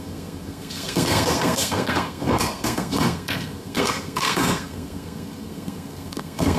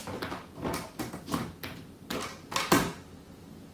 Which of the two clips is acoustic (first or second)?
second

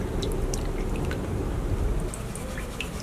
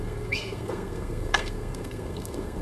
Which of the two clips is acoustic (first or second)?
first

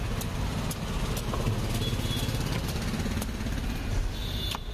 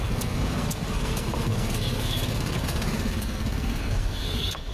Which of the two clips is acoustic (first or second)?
first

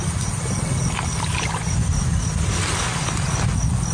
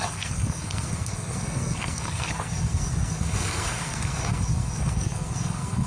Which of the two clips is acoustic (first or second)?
first